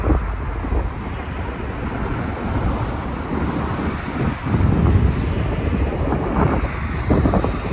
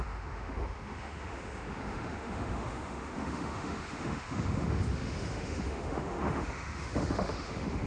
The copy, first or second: second